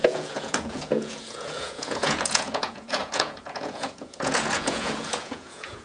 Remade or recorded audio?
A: remade